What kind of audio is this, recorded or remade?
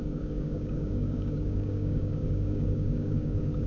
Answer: remade